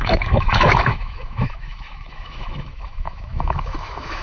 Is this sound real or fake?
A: fake